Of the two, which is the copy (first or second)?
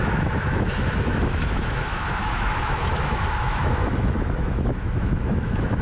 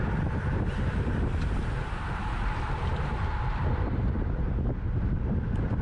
first